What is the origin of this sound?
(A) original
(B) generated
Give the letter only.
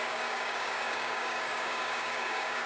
B